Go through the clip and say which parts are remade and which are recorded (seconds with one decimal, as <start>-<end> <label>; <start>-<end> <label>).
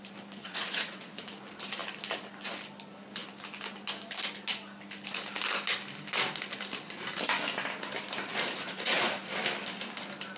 0.0-0.4 recorded; 0.4-1.3 remade; 1.3-8.3 recorded; 8.3-9.3 remade; 9.3-10.4 recorded